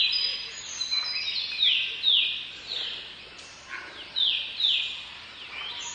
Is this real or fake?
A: real